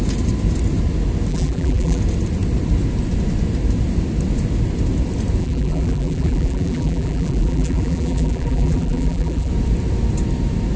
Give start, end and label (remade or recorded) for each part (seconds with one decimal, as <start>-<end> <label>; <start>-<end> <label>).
0.0-1.3 recorded; 1.3-2.0 remade; 2.0-5.4 recorded; 5.4-9.5 remade; 9.5-10.8 recorded

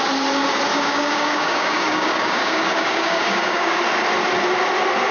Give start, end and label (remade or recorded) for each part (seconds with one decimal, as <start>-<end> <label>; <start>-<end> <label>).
0.0-0.7 recorded; 0.7-3.8 remade; 3.8-5.1 recorded

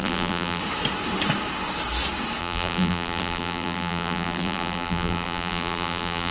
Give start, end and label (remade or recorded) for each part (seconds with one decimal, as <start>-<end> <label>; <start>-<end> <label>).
0.0-0.6 remade; 0.6-2.4 recorded; 2.4-6.3 remade

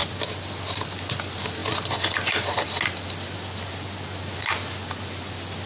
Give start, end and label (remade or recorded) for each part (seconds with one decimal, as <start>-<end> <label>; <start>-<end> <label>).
0.0-5.7 recorded